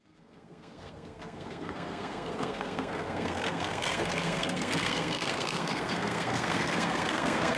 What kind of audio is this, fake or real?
fake